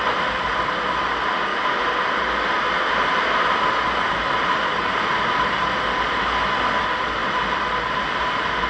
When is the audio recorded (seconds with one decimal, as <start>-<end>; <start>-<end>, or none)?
0.0-8.7